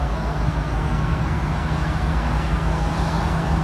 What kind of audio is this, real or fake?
fake